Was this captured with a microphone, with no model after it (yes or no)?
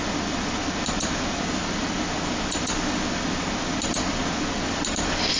yes